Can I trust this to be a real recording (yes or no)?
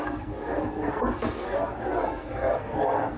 no